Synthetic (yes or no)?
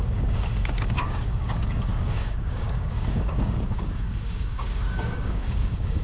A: yes